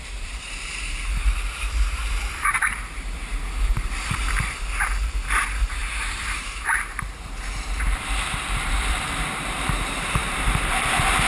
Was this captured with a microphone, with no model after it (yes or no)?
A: no